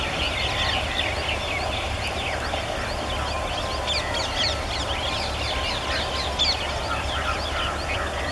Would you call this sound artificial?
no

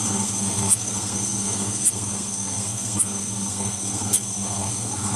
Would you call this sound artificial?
yes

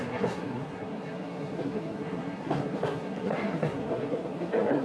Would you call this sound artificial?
yes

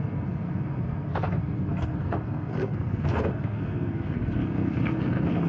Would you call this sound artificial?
yes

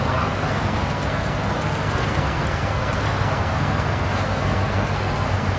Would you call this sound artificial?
yes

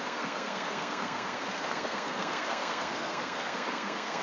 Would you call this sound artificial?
yes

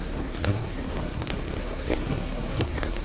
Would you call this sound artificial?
yes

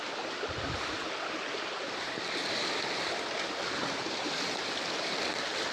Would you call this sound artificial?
no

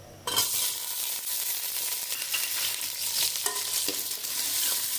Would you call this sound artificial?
no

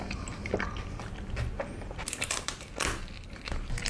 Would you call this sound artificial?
no